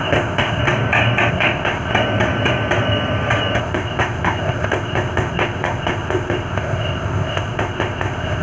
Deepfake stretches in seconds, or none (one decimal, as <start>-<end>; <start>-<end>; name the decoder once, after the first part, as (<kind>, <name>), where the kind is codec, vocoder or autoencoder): 0.0-0.6 (codec, ZipCodec); 1.3-1.9; 3.6-8.4